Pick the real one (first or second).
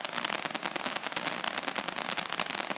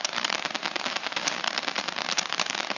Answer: first